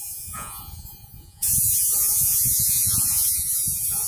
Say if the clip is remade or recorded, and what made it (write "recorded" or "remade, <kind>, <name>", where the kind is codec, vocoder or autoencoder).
remade, vocoder, Vocos